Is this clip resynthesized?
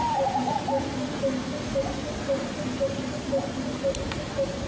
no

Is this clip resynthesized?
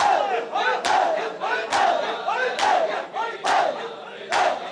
no